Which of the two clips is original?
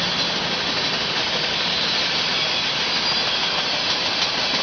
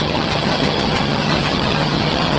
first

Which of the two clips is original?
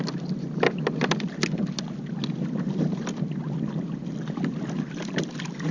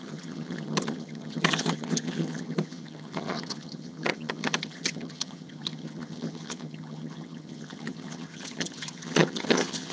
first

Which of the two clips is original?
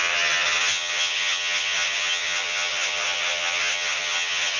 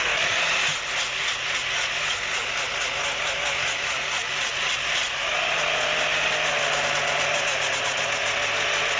second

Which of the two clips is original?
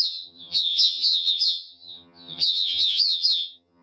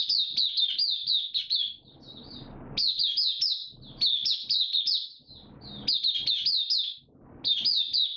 second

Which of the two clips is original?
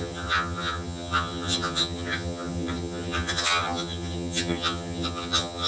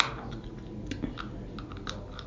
second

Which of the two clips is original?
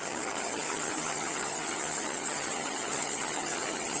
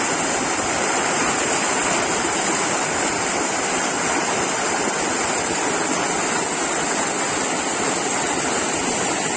second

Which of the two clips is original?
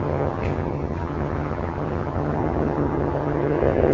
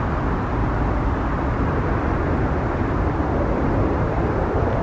second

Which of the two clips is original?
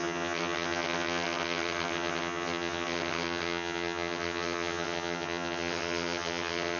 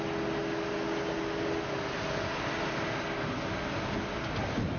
second